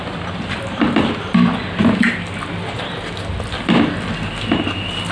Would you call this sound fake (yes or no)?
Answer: no